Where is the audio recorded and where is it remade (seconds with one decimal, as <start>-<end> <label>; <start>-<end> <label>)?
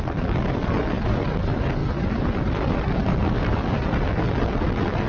0.0-5.1 recorded